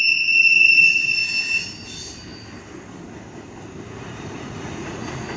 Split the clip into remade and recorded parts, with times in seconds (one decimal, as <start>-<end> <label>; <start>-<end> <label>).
0.0-1.2 remade; 1.2-3.9 recorded; 3.9-5.4 remade